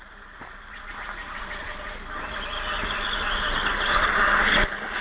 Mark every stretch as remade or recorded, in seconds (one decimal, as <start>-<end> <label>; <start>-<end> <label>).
0.0-1.2 recorded; 1.2-3.6 remade; 3.6-5.0 recorded